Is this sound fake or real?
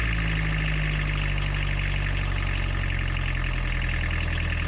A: real